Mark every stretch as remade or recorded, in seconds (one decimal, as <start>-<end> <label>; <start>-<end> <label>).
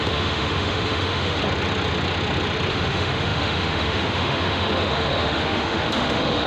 0.0-1.4 remade; 1.4-2.7 recorded; 2.7-6.5 remade